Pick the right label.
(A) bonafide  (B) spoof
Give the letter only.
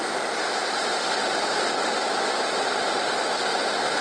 B